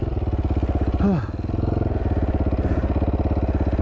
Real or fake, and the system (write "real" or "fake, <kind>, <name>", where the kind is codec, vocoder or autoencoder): real